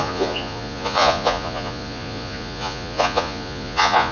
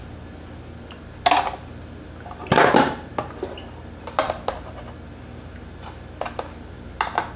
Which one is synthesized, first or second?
first